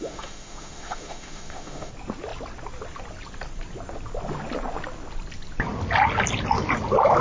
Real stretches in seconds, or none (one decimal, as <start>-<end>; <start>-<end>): 1.9-7.2